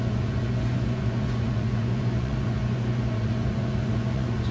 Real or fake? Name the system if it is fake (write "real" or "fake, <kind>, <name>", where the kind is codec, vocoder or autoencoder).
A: fake, vocoder, Vocos